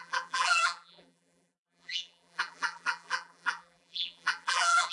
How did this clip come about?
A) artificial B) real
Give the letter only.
A